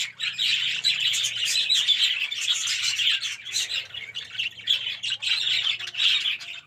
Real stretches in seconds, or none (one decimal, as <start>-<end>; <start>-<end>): 0.0-0.5; 1.0-6.7